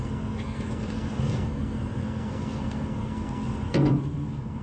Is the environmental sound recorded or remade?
remade